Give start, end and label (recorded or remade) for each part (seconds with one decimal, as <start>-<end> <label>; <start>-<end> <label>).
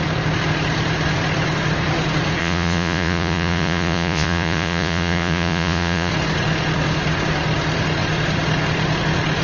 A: 0.0-2.4 recorded; 2.4-6.1 remade; 6.1-9.4 recorded